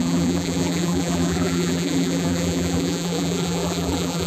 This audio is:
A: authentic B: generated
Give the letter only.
B